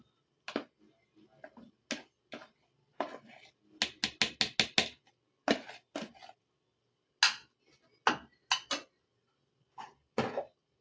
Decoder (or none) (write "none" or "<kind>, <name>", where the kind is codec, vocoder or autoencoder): none